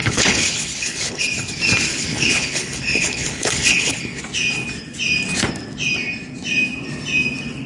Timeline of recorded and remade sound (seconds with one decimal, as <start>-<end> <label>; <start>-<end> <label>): 0.0-1.2 remade; 1.2-1.9 recorded; 1.9-4.2 remade; 4.2-7.7 recorded